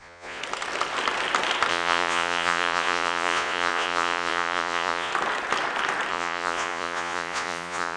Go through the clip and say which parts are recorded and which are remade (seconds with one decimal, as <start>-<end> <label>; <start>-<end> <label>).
0.0-0.4 remade; 0.4-1.7 recorded; 1.7-5.1 remade; 5.1-6.1 recorded; 6.1-8.0 remade